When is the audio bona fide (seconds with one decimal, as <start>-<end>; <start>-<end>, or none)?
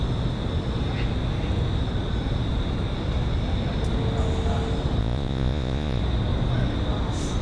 0.0-5.0; 6.0-7.4